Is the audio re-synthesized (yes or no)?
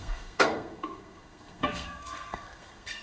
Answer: yes